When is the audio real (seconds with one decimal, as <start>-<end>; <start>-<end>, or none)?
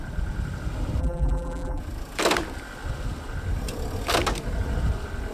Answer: 0.0-1.0; 1.8-5.3